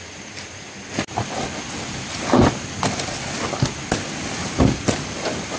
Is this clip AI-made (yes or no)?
no